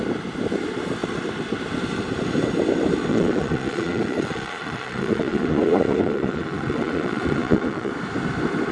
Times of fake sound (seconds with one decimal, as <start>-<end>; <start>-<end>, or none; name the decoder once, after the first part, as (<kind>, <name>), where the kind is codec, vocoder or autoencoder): 3.1-7.9 (vocoder, Vocos)